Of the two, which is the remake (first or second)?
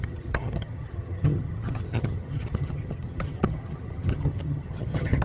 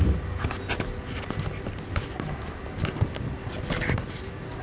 first